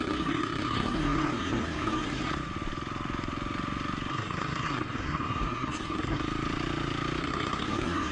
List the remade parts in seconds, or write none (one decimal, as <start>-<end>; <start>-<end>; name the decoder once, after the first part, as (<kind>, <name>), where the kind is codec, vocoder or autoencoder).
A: 0.0-2.3 (codec, SNAC); 4.1-6.2; 7.2-8.1